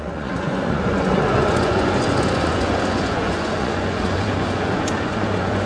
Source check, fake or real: fake